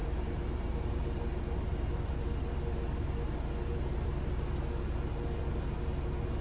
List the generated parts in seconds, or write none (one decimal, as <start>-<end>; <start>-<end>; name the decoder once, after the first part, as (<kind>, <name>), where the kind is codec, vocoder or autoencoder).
0.0-2.1 (vocoder, BigVGAN v2)